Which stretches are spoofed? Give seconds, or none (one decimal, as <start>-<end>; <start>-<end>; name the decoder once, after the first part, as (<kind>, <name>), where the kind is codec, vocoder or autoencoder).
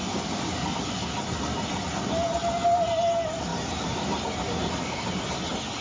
none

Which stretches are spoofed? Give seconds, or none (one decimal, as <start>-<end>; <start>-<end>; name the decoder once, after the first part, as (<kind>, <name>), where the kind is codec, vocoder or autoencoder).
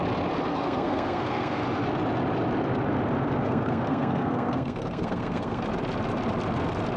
0.5-1.6 (codec, SNAC); 3.4-5.6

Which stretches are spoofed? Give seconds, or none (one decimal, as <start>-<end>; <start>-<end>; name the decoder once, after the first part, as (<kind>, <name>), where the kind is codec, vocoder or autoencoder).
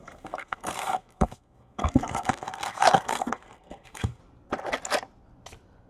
0.0-4.2 (codec, SNAC)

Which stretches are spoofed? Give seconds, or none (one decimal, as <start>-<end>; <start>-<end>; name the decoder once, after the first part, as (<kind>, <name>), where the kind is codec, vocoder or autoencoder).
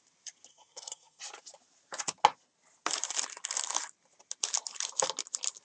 0.5-1.2 (codec, SNAC)